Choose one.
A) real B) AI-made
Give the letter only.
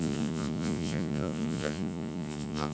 B